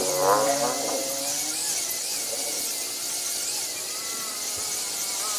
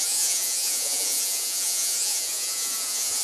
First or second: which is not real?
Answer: second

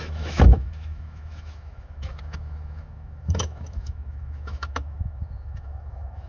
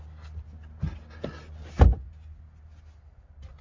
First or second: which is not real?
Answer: first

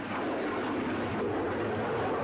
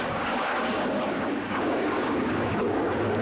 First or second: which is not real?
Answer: second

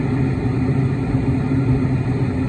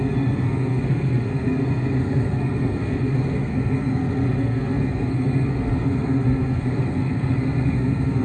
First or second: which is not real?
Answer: second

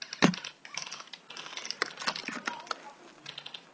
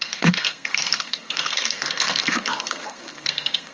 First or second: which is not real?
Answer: second